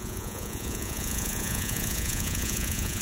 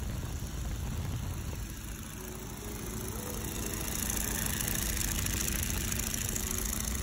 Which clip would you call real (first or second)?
second